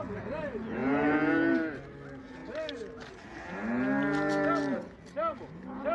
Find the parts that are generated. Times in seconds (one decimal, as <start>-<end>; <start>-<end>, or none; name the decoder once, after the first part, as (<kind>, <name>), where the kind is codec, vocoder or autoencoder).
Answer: none